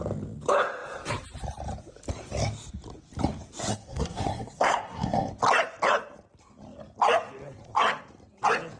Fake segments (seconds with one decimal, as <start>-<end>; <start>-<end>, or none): 3.7-5.3